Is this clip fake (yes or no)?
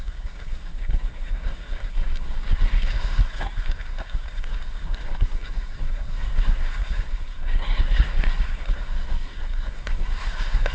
yes